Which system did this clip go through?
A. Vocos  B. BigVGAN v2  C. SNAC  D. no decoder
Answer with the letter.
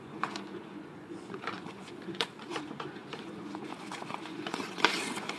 A